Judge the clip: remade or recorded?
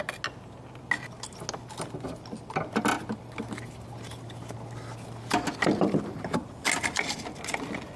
recorded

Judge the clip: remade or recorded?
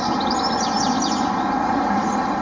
recorded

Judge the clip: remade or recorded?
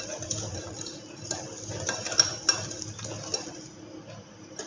recorded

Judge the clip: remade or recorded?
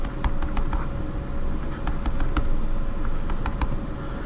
recorded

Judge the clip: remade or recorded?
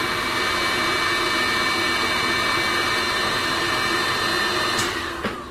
recorded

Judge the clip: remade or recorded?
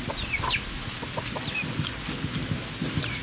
recorded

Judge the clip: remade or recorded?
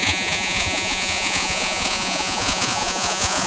remade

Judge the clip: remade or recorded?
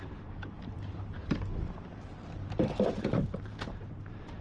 remade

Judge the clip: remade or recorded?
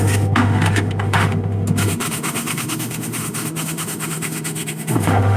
remade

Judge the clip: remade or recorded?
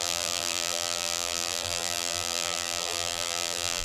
remade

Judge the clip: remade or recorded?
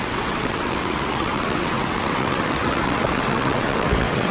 remade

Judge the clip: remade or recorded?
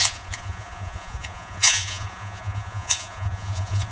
remade